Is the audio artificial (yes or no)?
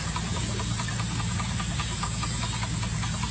no